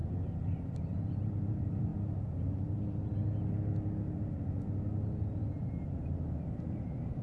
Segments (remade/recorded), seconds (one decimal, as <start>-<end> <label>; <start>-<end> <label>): 0.0-1.2 recorded; 1.2-1.9 remade; 1.9-5.4 recorded; 5.4-7.2 remade